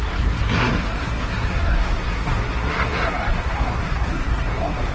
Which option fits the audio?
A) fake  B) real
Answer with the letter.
A